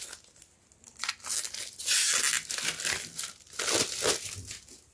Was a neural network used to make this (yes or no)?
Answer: no